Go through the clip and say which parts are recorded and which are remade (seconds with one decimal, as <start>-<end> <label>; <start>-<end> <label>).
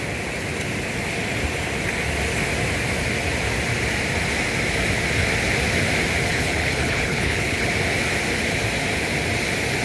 0.0-6.3 recorded; 6.3-7.7 remade; 7.7-9.8 recorded